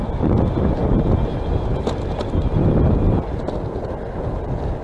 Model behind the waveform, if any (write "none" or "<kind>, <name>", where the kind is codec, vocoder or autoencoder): none